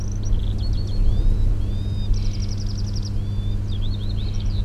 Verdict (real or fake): real